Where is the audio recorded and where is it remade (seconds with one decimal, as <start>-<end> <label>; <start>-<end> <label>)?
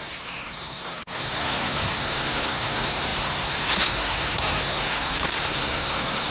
0.0-6.3 remade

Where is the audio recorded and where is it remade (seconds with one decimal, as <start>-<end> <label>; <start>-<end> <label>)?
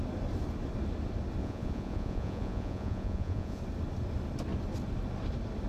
0.0-1.4 recorded; 1.4-3.6 remade; 3.6-5.7 recorded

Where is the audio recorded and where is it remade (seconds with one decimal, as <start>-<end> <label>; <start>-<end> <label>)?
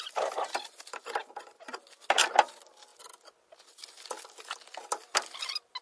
0.0-5.8 recorded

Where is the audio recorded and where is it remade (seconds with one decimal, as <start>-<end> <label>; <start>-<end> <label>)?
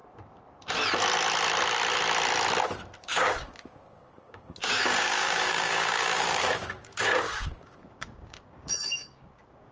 0.0-3.0 recorded; 3.0-9.7 remade